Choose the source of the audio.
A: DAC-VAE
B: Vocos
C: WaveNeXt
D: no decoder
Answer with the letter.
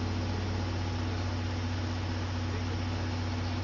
D